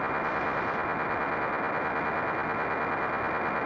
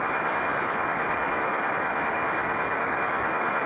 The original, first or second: first